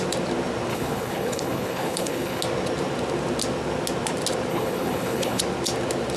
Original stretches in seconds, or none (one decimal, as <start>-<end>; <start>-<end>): 0.0-0.7; 2.4-4.5; 5.4-6.2